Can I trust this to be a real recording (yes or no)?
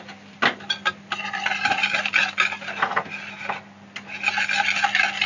yes